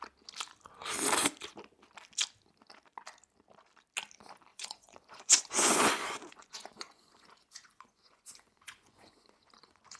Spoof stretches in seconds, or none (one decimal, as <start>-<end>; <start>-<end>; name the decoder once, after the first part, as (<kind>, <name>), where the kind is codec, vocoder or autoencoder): 4.5-10.0 (vocoder, Vocos)